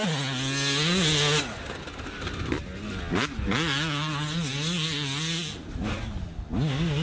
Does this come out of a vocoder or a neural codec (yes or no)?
no